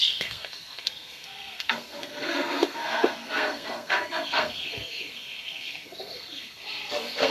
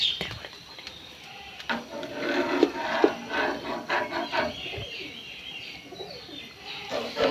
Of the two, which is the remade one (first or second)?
first